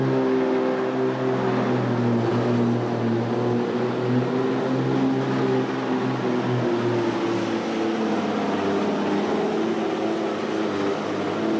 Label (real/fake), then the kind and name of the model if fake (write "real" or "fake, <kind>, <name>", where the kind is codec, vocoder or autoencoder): real